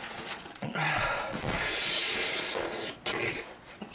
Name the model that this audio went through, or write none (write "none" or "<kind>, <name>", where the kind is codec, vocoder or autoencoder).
vocoder, Vocos